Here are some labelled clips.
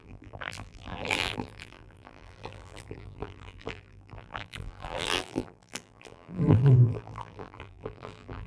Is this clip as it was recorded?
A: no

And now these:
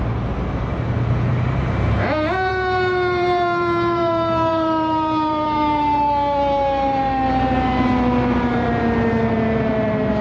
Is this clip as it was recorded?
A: no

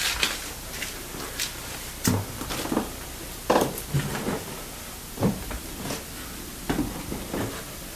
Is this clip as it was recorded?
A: no